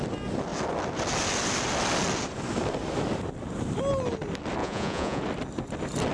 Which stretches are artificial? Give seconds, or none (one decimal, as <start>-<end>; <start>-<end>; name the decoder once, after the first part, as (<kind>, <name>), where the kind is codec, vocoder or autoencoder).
4.6-5.2 (vocoder, Vocos)